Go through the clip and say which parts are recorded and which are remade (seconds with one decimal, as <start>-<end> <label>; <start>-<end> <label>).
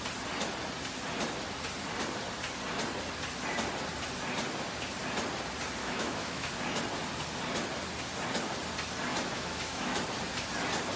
0.0-5.8 recorded; 5.8-6.5 remade; 6.5-9.1 recorded; 9.1-10.0 remade; 10.0-11.0 recorded